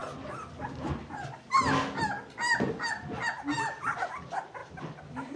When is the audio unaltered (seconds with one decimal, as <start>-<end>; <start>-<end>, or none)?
0.0-2.9